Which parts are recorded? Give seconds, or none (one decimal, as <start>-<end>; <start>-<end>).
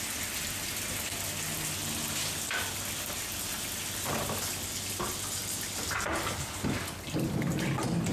0.0-8.1